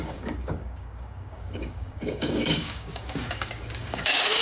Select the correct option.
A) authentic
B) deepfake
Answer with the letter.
B